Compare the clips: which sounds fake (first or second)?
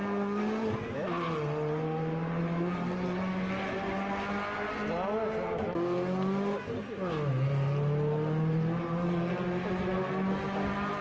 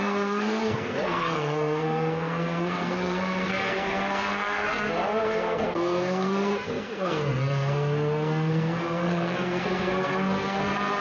second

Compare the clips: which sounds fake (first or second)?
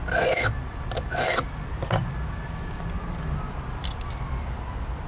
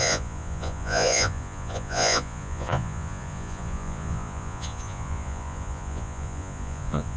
second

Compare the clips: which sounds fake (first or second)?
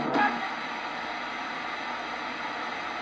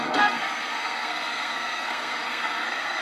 second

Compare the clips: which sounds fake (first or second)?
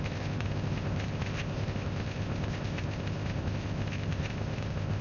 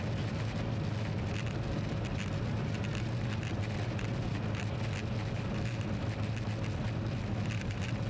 first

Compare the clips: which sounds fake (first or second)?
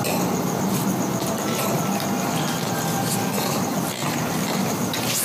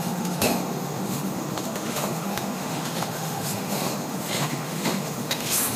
second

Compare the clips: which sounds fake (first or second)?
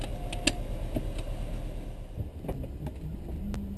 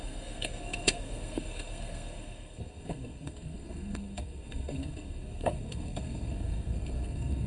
second